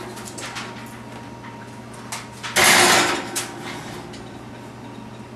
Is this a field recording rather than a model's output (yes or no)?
yes